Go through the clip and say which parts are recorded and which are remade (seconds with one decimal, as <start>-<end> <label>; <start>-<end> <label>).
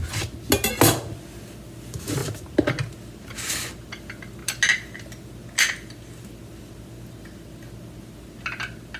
0.0-9.0 recorded